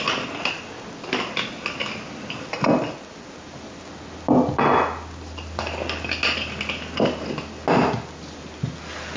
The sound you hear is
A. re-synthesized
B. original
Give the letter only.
B